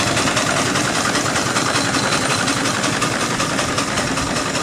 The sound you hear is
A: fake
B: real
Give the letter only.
B